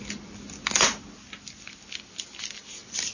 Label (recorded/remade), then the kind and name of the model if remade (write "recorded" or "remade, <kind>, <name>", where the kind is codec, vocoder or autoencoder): recorded